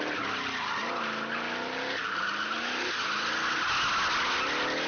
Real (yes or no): yes